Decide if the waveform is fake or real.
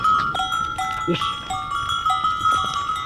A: real